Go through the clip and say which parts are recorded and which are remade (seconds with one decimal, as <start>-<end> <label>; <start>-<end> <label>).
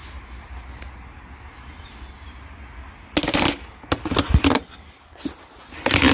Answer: 0.0-1.0 remade; 1.0-6.1 recorded